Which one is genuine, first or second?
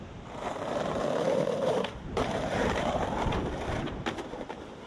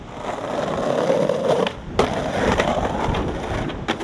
second